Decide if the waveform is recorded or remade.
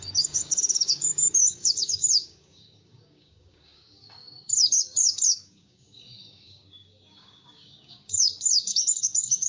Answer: remade